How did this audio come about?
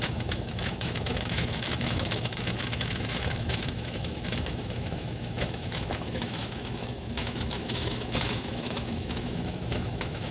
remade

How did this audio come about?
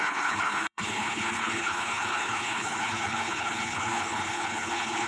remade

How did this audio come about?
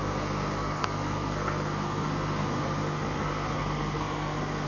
remade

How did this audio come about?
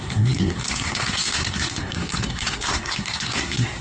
remade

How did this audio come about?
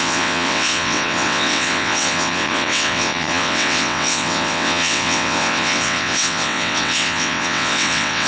remade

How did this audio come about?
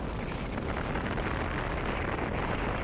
recorded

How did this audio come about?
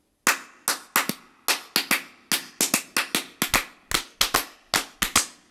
recorded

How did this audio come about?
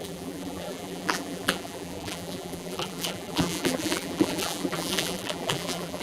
remade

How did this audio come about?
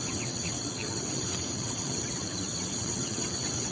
remade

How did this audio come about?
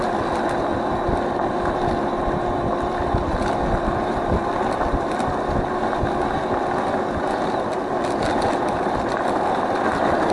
recorded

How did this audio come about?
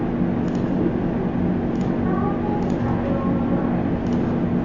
recorded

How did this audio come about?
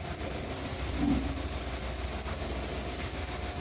recorded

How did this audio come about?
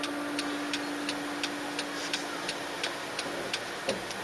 recorded